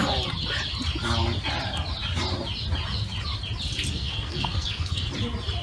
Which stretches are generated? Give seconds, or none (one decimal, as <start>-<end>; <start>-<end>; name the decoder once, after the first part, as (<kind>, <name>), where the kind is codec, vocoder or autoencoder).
3.9-5.1 (codec, SNAC)